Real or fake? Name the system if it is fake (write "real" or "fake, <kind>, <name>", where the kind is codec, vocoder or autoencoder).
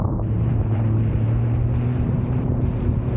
fake, vocoder, BigVGAN v2